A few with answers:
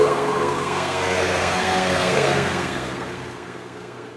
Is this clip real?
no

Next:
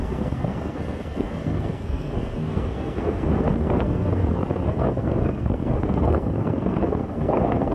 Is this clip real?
no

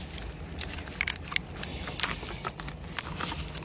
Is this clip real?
yes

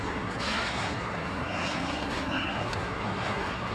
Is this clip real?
no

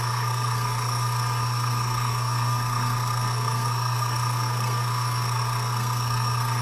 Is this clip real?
no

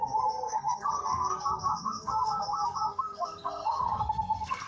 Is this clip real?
no